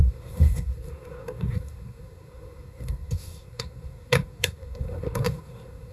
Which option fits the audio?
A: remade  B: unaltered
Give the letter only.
A